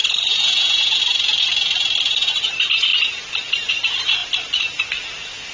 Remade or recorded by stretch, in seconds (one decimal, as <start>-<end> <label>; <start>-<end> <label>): 0.0-1.0 remade; 1.0-5.5 recorded